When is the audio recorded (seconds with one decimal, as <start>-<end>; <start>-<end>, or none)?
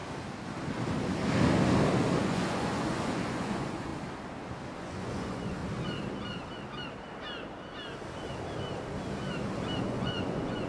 0.0-2.2; 3.9-4.8; 5.6-9.8